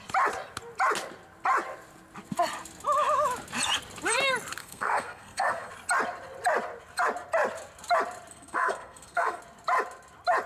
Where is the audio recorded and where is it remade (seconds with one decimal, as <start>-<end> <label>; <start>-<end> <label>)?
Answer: 0.0-4.6 recorded; 4.6-5.7 remade; 5.7-8.3 recorded; 8.3-9.4 remade; 9.4-10.5 recorded